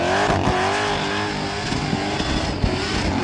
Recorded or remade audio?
recorded